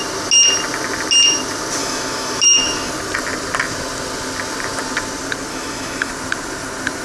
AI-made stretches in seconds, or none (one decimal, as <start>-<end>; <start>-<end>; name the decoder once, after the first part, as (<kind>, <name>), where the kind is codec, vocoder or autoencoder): 1.8-2.9 (autoencoder, DAC-VAE); 5.5-6.1